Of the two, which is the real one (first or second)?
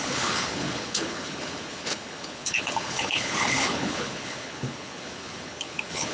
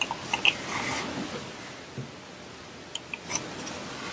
second